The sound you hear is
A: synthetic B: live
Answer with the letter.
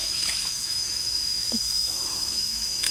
A